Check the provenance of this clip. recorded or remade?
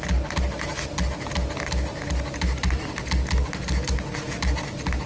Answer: recorded